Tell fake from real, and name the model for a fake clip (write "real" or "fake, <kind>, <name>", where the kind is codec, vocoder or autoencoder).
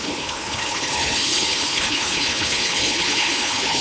fake, codec, HILCodec